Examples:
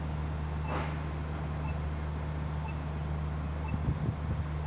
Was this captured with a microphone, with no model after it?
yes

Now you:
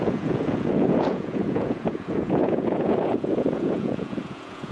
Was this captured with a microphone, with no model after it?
no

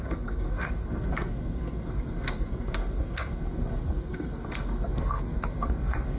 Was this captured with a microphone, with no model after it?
no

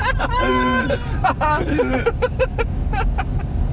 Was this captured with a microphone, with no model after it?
yes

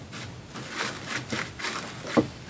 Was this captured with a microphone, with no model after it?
yes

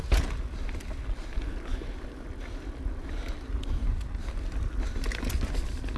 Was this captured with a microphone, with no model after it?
yes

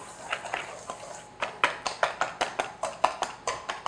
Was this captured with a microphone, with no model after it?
yes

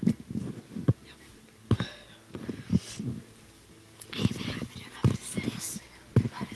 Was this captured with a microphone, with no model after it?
yes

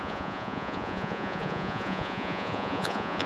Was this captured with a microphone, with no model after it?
no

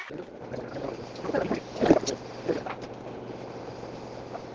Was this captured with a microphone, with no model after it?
yes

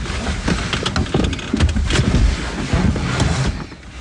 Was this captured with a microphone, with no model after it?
yes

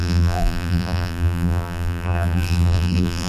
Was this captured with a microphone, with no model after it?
no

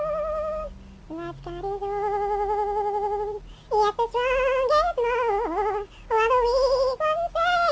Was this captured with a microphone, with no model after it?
yes